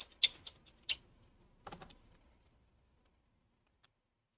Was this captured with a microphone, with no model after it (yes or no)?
yes